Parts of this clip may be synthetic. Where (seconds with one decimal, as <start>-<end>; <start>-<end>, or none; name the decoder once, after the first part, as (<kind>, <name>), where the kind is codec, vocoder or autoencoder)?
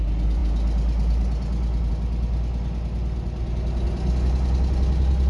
none